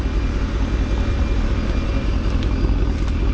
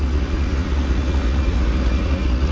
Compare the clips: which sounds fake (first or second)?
second